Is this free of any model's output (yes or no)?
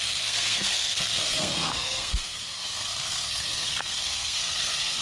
no